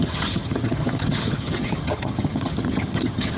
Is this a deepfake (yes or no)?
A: yes